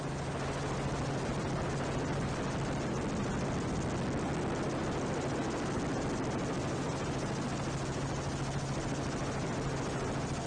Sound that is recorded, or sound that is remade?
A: recorded